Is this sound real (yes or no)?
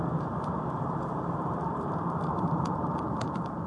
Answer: no